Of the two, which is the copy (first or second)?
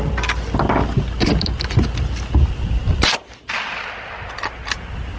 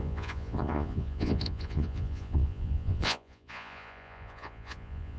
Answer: second